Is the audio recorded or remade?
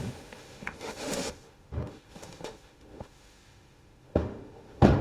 remade